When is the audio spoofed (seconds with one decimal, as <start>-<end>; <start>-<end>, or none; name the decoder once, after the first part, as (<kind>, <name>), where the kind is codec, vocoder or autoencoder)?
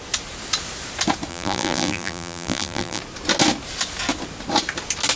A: 1.3-3.0 (vocoder, BigVGAN v2)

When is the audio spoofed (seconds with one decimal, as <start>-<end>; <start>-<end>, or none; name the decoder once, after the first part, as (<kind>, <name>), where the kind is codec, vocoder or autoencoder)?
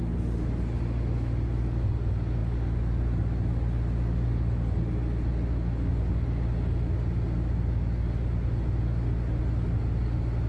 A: none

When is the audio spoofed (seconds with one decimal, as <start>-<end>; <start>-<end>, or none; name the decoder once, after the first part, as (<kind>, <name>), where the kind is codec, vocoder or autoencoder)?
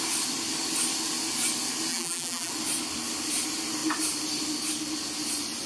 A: 1.9-2.5 (vocoder, BigVGAN v2)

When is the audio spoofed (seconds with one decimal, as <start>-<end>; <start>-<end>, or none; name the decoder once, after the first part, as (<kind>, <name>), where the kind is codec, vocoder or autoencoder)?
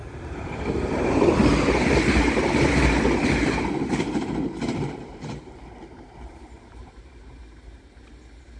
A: 3.2-8.2 (vocoder, BigVGAN v2)